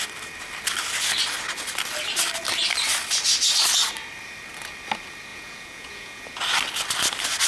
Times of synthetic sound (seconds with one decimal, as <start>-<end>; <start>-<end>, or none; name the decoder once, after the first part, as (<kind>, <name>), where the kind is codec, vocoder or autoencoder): 5.3-6.4 (vocoder, Vocos)